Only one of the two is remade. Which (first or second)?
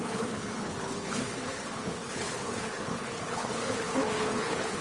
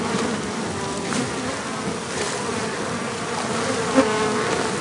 first